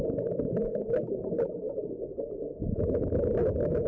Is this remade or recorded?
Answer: recorded